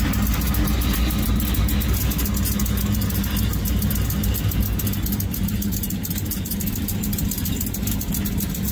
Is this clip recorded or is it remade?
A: recorded